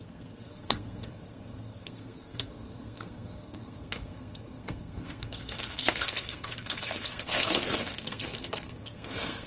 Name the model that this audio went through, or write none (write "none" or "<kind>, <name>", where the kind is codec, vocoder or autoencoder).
codec, SNAC